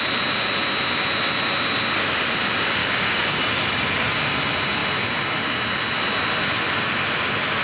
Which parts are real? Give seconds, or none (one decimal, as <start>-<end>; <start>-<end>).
0.0-2.8; 4.1-7.6